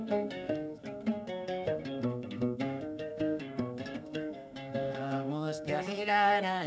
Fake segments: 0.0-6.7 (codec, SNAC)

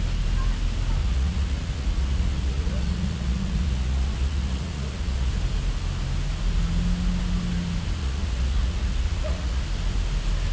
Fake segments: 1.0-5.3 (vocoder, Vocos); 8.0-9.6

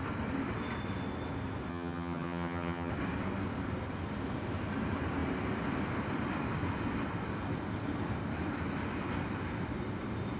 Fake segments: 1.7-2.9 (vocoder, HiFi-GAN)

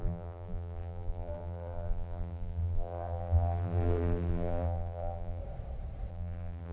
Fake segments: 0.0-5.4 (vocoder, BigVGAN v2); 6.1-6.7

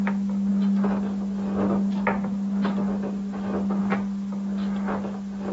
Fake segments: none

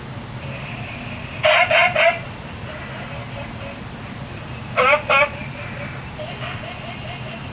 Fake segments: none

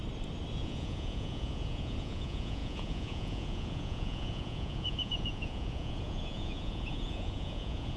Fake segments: 0.5-8.0 (vocoder, Vocos)